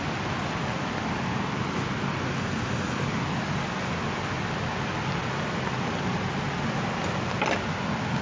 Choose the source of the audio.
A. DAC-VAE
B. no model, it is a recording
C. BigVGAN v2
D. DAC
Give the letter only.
B